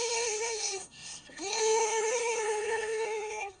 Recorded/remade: remade